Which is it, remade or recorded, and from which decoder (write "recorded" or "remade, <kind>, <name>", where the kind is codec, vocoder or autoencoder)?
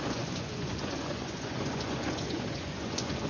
remade, vocoder, Vocos